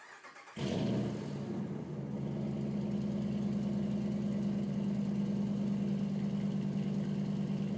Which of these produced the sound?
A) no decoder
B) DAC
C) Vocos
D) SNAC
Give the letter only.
A